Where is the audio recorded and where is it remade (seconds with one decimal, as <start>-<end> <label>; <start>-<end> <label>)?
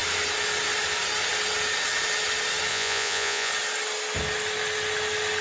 0.0-2.7 recorded; 2.7-3.5 remade; 3.5-5.4 recorded